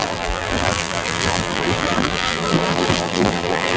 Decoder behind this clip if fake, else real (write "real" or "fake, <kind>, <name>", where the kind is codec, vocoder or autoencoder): fake, vocoder, BigVGAN v2